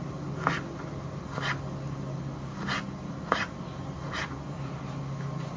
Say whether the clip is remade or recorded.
recorded